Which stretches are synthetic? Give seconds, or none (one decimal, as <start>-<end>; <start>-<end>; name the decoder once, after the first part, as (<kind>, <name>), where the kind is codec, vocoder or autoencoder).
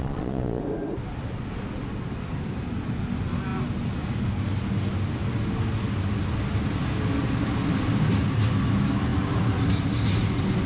0.0-0.6 (vocoder, Vocos)